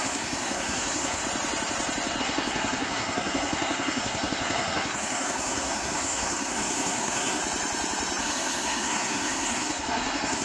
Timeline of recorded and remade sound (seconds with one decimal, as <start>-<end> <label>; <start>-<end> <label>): 0.0-1.2 remade; 1.2-2.2 recorded; 2.2-7.4 remade; 7.4-8.2 recorded; 8.2-10.4 remade